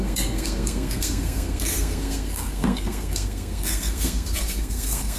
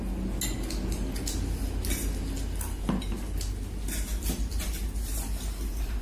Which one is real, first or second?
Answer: second